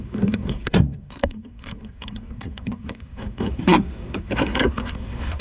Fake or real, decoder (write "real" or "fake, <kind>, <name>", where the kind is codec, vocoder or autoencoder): fake, codec, SNAC